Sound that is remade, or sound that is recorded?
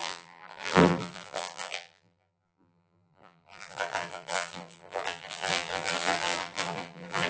remade